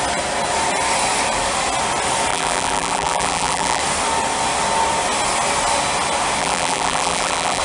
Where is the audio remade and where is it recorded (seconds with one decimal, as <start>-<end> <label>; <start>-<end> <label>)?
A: 0.0-2.3 recorded; 2.3-3.8 remade; 3.8-6.4 recorded; 6.4-7.6 remade